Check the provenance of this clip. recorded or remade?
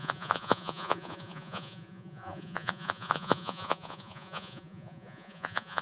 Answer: remade